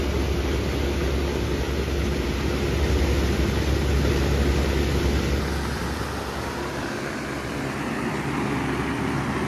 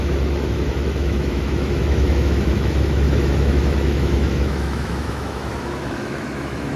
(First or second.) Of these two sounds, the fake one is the second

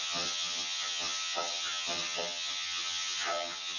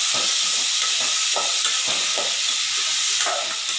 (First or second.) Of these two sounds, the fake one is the first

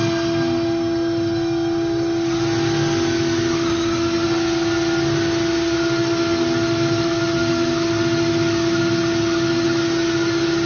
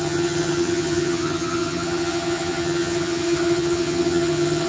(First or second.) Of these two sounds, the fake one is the second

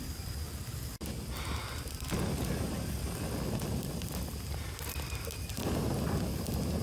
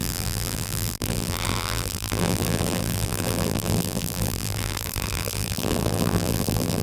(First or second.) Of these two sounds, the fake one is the second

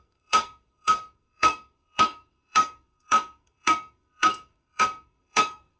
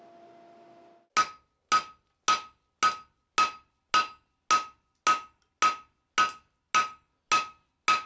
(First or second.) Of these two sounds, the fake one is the first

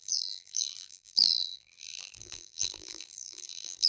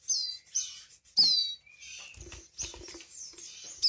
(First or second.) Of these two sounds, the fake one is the first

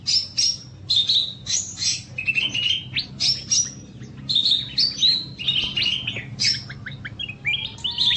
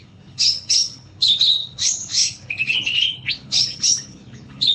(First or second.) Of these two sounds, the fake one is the second